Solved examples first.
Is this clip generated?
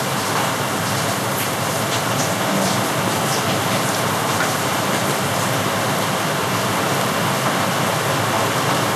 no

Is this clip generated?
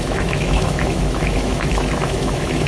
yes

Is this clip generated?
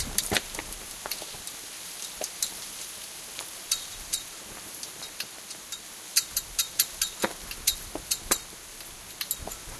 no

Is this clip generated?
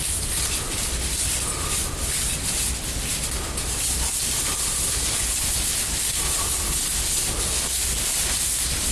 no